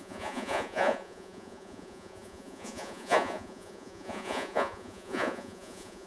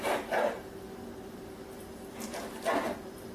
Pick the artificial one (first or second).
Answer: first